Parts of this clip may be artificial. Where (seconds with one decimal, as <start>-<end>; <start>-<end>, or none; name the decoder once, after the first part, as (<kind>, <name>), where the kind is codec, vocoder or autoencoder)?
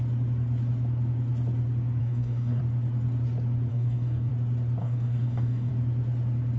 2.0-2.6 (codec, DAC); 3.7-4.3; 4.8-5.7